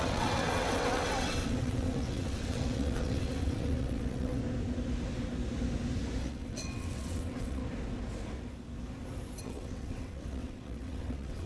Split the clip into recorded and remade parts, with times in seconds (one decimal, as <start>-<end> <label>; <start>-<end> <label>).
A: 0.0-4.4 remade; 4.4-6.2 recorded; 6.2-7.6 remade; 7.6-9.4 recorded; 9.4-11.5 remade